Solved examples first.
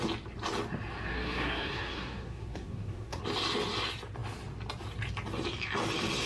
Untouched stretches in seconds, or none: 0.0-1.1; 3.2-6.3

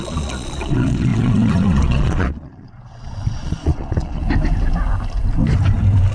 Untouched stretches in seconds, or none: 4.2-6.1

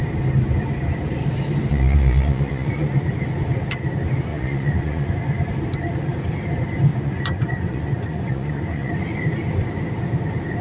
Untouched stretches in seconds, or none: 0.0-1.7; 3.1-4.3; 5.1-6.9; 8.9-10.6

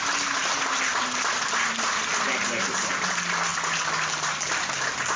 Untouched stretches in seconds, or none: 0.0-5.2

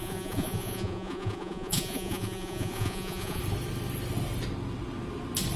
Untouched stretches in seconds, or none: 3.4-5.6

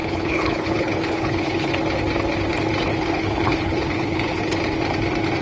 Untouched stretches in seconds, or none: 1.7-2.9; 4.4-5.4